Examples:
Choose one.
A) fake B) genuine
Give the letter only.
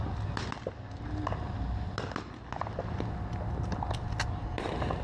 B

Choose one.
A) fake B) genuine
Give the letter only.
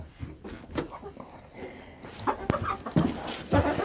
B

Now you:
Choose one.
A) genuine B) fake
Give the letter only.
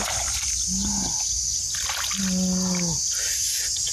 A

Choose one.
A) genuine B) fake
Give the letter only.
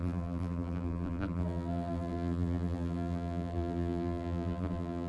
B